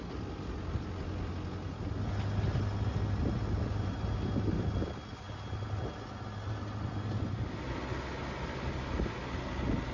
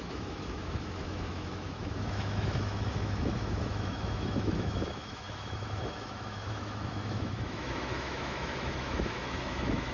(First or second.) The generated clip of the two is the second